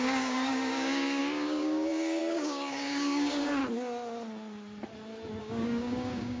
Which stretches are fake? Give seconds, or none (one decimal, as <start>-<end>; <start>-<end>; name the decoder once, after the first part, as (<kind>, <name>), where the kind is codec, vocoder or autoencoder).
0.0-3.6 (codec, DAC); 5.4-6.4